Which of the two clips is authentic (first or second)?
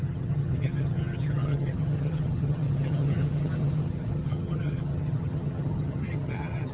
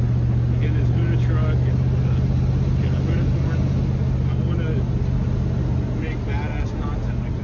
second